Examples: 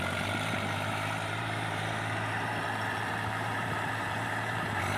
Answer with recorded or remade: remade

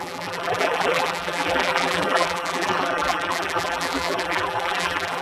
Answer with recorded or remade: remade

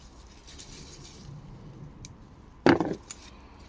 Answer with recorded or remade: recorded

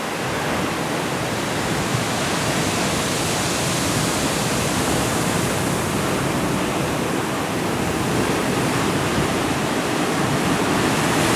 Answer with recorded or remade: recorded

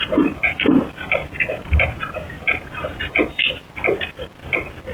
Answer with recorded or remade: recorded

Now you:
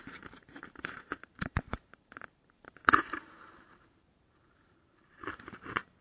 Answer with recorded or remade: remade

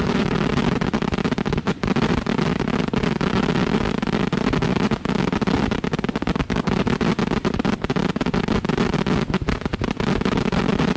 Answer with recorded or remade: recorded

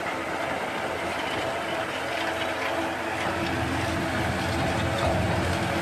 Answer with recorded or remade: recorded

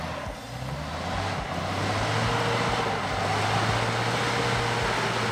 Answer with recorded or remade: recorded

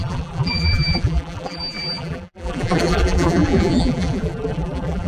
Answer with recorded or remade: remade